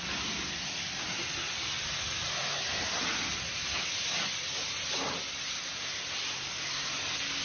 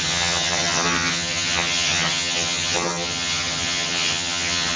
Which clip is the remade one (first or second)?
second